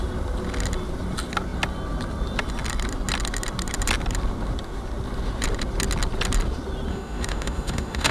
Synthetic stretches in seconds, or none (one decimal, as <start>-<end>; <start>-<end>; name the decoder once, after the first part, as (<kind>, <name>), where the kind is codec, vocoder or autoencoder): 6.9-8.1 (autoencoder, DAC-VAE)